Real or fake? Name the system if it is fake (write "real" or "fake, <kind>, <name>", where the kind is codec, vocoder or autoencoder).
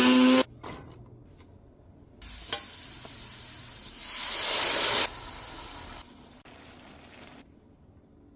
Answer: real